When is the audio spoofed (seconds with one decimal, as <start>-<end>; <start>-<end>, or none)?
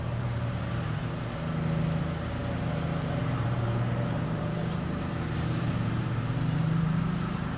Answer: 0.0-1.0; 2.0-7.6